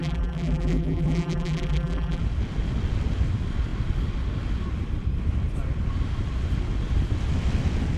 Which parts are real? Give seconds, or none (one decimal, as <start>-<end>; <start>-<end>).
2.2-8.0